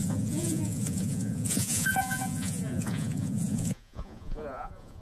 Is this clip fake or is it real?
fake